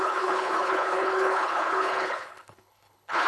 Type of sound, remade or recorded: remade